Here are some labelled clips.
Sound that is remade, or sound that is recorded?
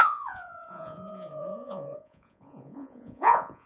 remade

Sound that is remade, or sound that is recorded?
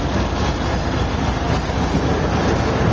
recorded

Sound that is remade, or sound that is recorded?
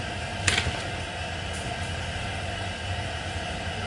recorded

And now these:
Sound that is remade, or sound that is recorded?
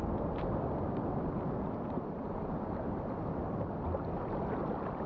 recorded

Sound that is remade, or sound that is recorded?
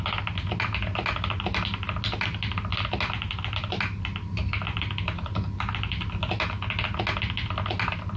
recorded